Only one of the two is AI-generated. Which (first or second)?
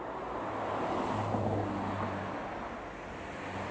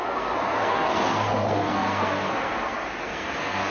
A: second